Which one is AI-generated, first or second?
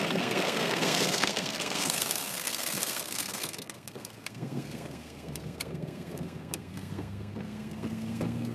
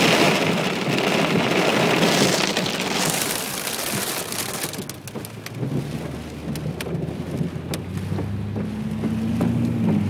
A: first